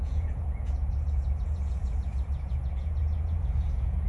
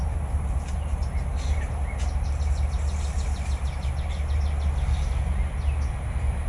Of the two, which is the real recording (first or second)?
second